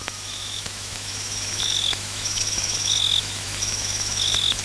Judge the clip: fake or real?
fake